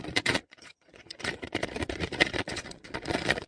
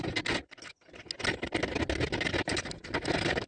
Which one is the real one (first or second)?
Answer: second